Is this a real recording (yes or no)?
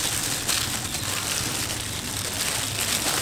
yes